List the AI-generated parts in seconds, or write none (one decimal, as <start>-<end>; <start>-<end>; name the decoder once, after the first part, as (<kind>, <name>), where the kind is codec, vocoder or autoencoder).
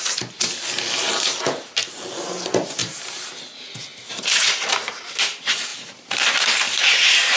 2.8-3.3 (vocoder, BigVGAN v2); 5.7-7.4